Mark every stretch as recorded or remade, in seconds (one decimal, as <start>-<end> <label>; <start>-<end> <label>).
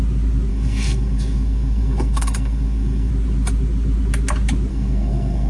0.0-0.5 recorded; 0.5-3.1 remade; 3.1-4.7 recorded; 4.7-5.5 remade